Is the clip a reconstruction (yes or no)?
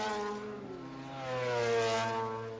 no